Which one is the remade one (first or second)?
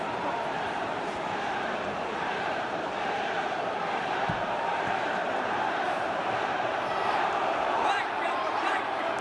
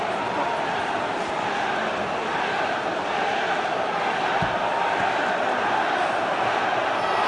first